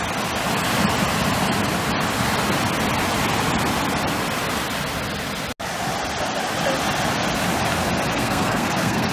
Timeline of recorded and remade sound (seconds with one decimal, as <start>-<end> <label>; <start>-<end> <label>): 0.0-8.1 recorded; 8.1-9.1 remade